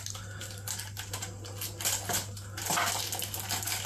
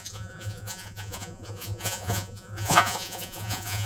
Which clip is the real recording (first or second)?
first